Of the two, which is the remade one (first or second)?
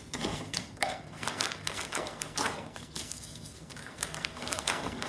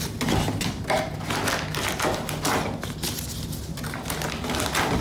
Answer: first